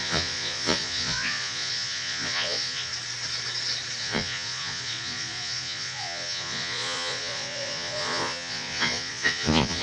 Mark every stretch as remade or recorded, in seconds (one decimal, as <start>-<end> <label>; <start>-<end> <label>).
0.0-2.9 remade; 2.9-4.0 recorded; 4.0-9.8 remade